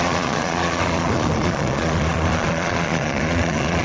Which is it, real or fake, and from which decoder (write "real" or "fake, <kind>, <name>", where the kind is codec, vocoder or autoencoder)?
fake, vocoder, Vocos